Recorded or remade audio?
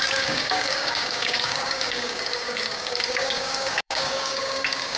remade